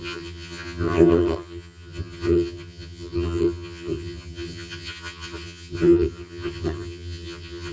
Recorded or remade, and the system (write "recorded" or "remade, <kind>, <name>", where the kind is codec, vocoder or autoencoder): remade, vocoder, HiFi-GAN